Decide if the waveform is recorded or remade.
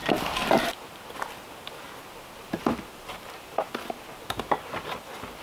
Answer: recorded